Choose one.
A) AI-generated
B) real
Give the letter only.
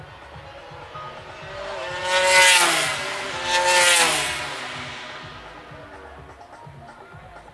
B